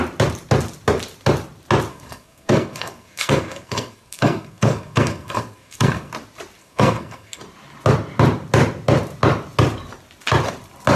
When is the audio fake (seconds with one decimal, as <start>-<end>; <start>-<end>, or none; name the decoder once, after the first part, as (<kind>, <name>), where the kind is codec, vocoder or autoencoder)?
1.9-6.1 (codec, SNAC); 6.6-7.4